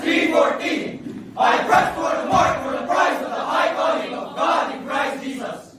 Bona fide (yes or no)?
yes